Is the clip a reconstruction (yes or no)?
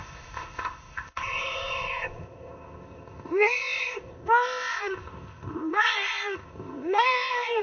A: yes